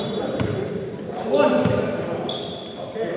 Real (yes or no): no